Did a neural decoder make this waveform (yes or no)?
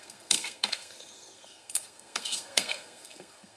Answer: yes